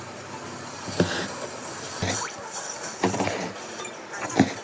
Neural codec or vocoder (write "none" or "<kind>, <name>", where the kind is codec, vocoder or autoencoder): none